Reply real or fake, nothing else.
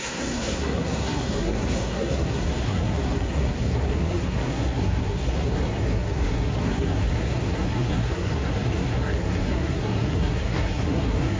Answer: fake